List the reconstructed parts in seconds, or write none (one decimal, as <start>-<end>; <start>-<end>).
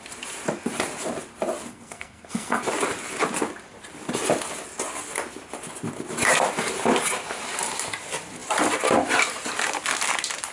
1.7-2.6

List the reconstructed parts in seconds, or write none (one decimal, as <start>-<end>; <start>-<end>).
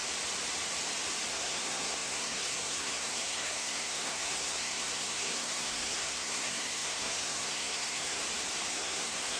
1.3-8.2; 8.7-9.4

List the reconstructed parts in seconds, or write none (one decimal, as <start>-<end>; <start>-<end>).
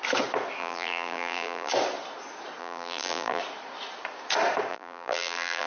0.6-1.7; 2.6-3.4; 4.7-5.7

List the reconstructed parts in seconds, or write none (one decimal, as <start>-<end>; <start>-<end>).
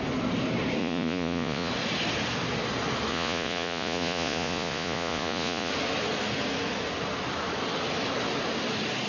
0.8-1.7; 3.1-5.7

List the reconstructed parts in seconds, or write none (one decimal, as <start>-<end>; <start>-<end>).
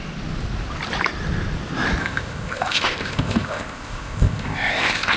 2.0-5.2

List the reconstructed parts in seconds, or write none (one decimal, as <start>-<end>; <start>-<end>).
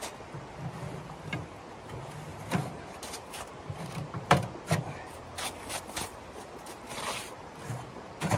2.3-4.5